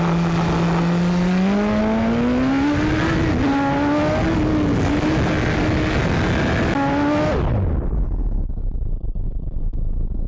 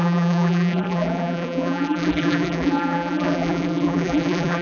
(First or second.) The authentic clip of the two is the first